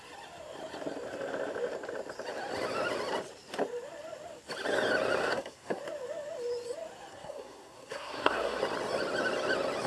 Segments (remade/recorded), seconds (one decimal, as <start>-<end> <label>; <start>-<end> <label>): 0.0-5.2 recorded; 5.2-5.8 remade; 5.8-7.1 recorded; 7.1-8.6 remade; 8.6-9.9 recorded